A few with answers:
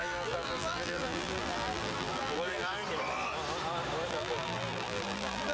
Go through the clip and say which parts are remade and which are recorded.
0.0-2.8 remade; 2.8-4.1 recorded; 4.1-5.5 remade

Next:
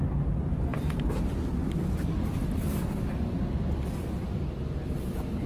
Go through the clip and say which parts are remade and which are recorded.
0.0-5.5 recorded

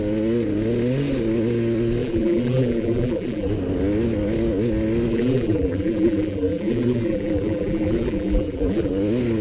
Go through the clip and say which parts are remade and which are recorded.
0.0-2.0 recorded; 2.0-3.5 remade; 3.5-5.1 recorded; 5.1-8.9 remade; 8.9-9.4 recorded